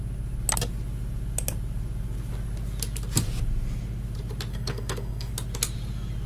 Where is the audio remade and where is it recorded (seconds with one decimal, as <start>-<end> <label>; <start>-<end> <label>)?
0.0-4.5 recorded; 4.5-5.3 remade; 5.3-6.3 recorded